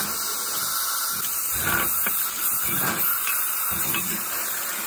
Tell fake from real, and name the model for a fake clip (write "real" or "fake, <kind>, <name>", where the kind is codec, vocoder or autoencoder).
real